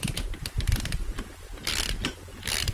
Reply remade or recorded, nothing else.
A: recorded